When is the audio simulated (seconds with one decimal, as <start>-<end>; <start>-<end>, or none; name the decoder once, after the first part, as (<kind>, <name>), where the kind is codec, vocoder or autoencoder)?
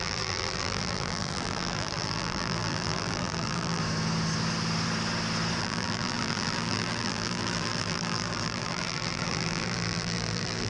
0.0-3.8 (vocoder, BigVGAN v2); 5.6-10.7